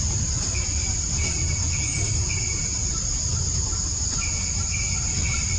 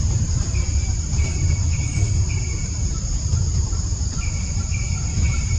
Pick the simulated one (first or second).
second